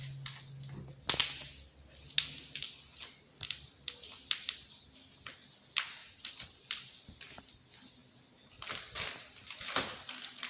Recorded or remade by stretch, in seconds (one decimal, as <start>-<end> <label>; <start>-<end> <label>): 0.0-10.5 recorded